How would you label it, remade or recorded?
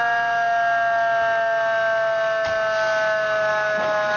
recorded